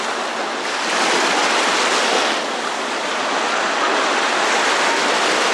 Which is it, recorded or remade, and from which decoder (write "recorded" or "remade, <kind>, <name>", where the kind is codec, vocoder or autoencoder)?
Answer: recorded